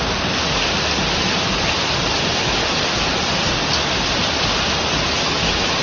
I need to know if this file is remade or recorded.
recorded